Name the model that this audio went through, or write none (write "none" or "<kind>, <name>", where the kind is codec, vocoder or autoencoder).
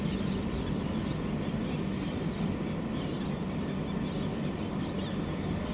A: none